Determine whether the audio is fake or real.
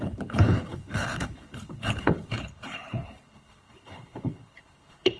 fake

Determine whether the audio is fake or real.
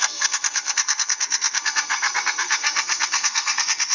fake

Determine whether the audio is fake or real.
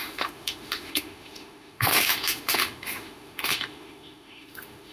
fake